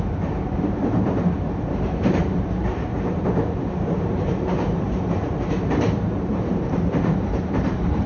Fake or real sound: fake